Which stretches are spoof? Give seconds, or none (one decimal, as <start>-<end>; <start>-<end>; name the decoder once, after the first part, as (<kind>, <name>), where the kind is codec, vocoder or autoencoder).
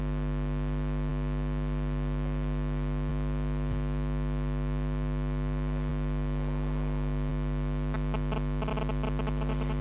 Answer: none